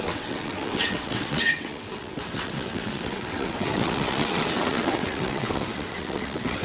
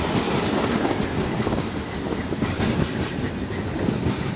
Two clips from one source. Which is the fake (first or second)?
first